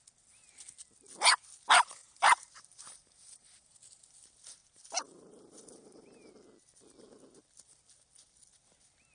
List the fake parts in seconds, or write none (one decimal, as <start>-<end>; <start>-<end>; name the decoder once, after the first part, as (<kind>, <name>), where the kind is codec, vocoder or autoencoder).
2.0-3.8 (vocoder, BigVGAN v2); 4.6-6.3